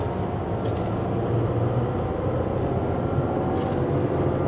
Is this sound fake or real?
real